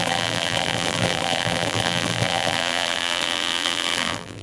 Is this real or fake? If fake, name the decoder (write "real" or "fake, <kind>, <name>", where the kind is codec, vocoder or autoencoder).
fake, vocoder, BigVGAN v2